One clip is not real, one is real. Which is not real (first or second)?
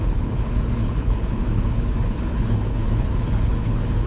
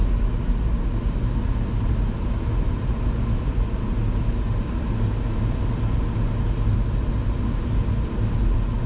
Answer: first